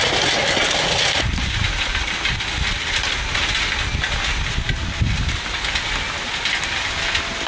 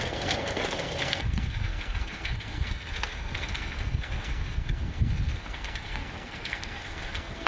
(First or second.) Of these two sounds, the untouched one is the first